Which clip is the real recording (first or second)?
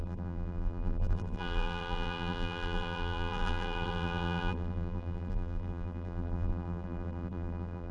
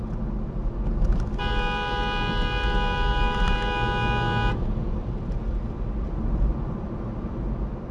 second